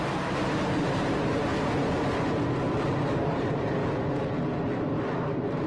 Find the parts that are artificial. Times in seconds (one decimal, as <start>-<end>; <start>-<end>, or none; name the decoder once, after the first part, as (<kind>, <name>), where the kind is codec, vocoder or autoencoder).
0.0-1.5 (vocoder, BigVGAN v2); 3.1-3.8; 5.1-5.7